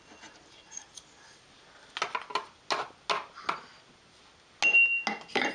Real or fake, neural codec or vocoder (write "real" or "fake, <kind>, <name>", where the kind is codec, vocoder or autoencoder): real